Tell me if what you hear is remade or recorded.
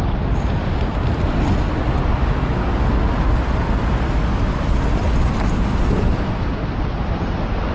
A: recorded